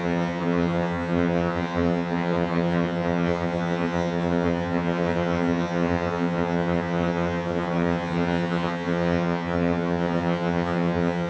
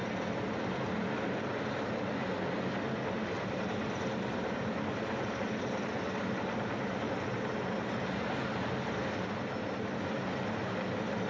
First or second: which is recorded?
second